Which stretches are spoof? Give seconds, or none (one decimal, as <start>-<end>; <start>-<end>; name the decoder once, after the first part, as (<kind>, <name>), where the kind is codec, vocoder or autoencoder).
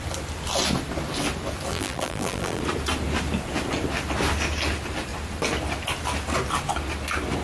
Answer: 1.7-2.6 (vocoder, BigVGAN v2)